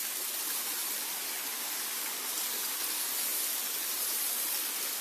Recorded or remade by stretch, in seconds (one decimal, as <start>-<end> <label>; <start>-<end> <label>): 0.0-5.0 recorded